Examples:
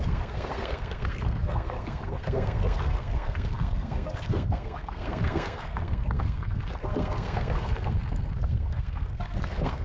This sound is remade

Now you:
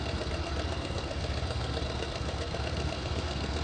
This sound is remade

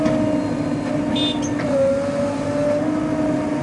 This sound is recorded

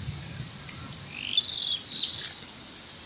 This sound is recorded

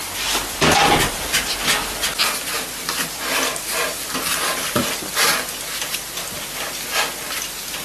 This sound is recorded